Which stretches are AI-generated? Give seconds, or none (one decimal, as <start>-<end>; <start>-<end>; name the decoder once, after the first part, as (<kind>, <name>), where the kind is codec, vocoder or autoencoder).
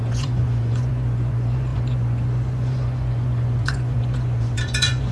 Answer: 0.0-5.1 (vocoder, Vocos)